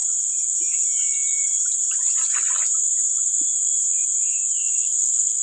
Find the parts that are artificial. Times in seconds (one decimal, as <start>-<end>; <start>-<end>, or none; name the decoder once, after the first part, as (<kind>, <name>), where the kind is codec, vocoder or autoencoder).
4.8-5.4 (codec, HILCodec)